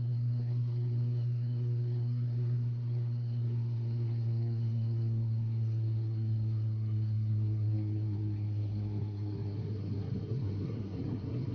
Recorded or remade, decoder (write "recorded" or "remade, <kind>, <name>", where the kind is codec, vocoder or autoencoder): remade, codec, SNAC